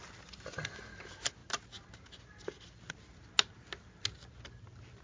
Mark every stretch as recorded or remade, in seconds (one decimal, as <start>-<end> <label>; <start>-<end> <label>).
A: 0.0-5.0 recorded